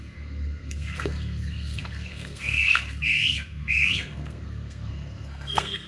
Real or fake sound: fake